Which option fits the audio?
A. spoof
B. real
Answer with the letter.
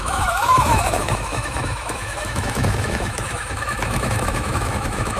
A